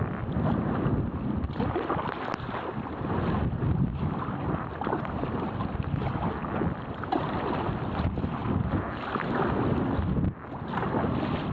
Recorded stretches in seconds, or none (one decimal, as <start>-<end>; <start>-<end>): 0.0-11.5